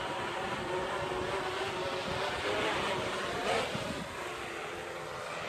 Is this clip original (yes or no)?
yes